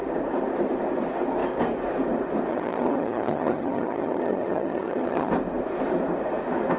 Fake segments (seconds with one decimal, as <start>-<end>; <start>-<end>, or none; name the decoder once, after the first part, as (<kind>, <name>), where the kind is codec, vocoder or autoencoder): 2.5-5.3 (vocoder, HiFi-GAN)